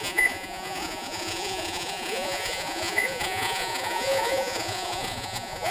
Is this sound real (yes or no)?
no